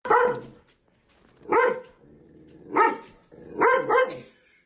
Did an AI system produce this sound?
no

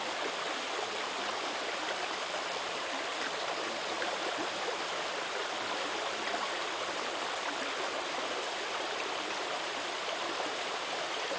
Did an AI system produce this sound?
yes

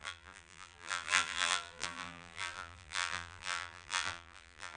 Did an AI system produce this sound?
yes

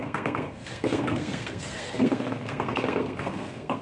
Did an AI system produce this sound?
yes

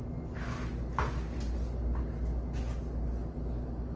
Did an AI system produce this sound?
no